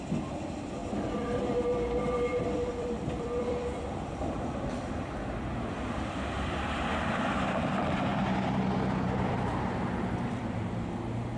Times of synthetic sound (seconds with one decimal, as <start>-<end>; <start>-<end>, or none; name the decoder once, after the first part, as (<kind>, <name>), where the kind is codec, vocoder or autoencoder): 0.8-1.4 (vocoder, BigVGAN v2); 2.3-7.5; 8.1-10.7

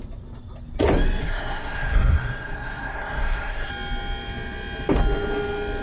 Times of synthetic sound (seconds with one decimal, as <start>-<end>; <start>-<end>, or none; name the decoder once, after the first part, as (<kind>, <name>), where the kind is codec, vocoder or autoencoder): 1.2-3.7 (codec, SNAC)

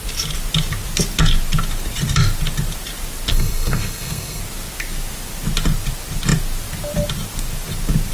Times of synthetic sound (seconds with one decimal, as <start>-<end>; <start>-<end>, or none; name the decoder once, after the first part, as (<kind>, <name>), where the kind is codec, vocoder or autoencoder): 3.3-4.4 (codec, SNAC)

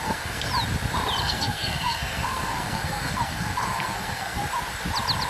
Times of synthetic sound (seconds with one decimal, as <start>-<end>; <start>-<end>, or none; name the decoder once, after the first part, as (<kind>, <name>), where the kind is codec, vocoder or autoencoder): 0.0-0.5 (codec, SNAC); 1.2-4.4

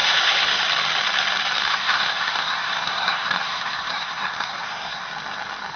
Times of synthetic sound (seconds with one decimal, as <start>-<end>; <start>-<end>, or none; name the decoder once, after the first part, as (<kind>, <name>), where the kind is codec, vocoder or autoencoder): 0.0-0.6 (codec, SNAC); 1.6-5.1

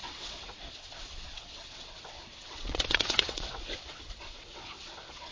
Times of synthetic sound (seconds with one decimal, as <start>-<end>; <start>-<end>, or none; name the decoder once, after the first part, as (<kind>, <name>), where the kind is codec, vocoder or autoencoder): 0.0-5.3 (vocoder, WaveNeXt)

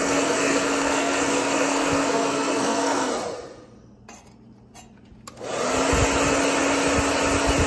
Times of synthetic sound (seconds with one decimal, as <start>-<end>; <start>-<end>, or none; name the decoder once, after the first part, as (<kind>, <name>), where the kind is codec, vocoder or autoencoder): 0.0-3.1 (codec, SNAC)